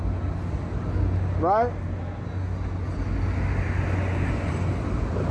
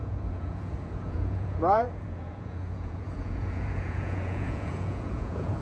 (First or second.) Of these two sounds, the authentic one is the first